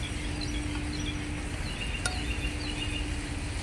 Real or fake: real